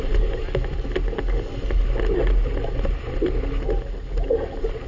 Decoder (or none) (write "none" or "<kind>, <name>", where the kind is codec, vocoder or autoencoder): none